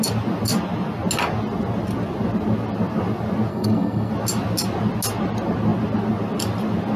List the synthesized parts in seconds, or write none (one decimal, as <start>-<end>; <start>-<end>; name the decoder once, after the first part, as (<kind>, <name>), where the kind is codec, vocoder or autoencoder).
3.5-4.1 (codec, SNAC)